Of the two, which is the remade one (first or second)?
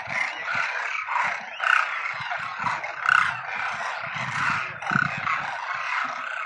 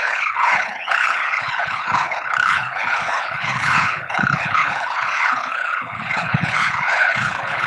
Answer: second